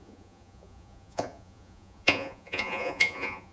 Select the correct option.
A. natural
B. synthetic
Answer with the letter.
B